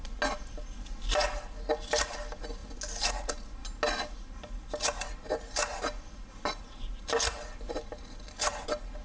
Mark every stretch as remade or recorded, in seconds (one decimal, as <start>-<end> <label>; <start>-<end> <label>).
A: 0.0-9.0 recorded